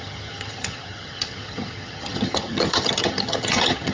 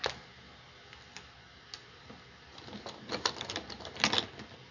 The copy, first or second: first